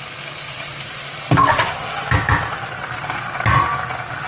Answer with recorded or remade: recorded